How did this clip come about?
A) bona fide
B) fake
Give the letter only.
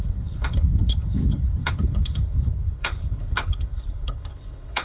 B